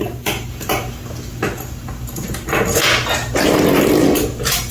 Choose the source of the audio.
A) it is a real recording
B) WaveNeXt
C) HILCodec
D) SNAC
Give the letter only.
A